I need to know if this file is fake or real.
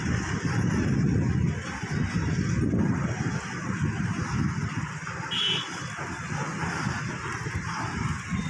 real